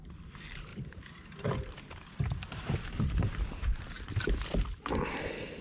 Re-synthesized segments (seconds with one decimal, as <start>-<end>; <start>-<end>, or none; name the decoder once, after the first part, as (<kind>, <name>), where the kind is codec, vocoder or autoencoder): 0.0-5.6 (vocoder, BigVGAN v2)